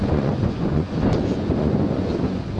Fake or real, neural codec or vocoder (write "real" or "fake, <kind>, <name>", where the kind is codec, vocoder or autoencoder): fake, vocoder, Vocos